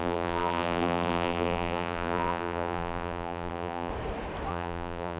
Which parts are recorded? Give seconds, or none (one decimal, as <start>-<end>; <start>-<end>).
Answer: 3.9-4.5